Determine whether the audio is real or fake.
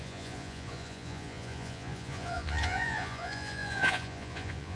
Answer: fake